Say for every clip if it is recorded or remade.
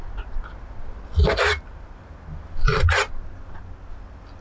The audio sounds recorded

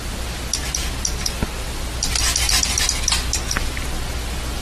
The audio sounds recorded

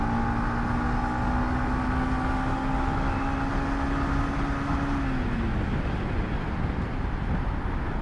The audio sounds recorded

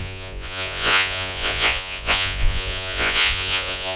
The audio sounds remade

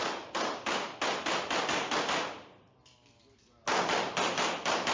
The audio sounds recorded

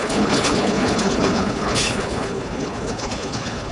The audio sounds remade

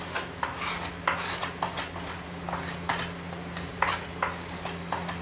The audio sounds recorded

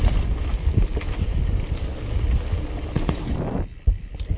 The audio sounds recorded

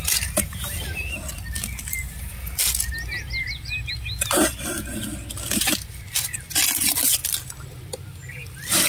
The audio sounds recorded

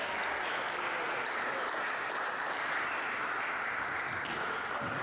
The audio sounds recorded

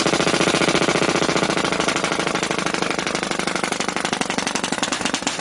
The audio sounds recorded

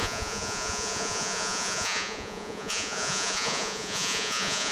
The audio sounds remade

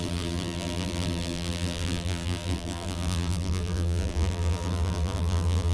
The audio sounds remade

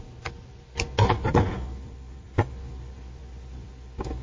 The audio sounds recorded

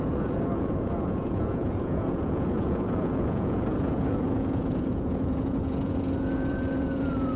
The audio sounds remade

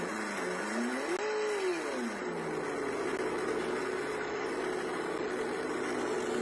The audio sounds recorded